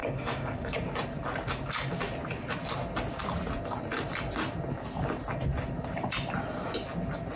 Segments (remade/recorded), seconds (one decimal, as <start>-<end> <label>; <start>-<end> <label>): 0.0-0.8 remade; 0.8-7.4 recorded